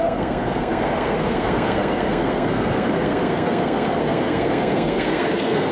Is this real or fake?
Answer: fake